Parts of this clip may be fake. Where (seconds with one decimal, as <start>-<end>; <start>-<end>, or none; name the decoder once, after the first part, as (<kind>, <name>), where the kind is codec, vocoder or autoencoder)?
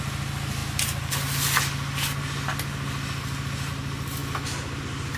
none